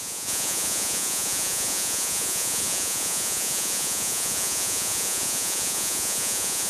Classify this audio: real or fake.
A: fake